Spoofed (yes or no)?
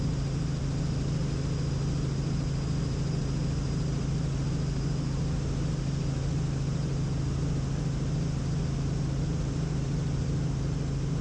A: no